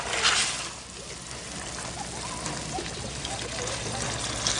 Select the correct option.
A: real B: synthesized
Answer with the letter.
A